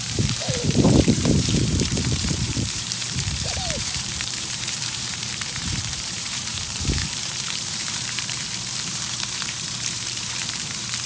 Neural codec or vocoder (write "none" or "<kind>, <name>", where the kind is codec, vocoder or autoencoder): vocoder, BigVGAN v2